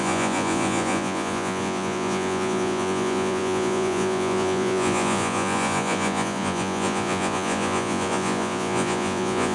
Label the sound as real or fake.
fake